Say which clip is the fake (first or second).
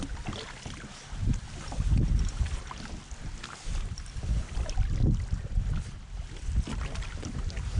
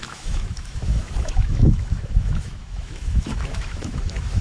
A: second